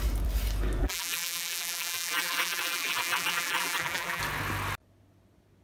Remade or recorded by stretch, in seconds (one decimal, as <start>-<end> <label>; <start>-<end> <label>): 0.0-0.8 recorded; 0.8-4.2 remade; 4.2-5.6 recorded